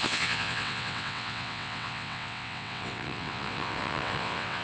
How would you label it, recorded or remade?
remade